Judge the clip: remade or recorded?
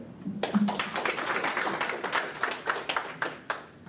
recorded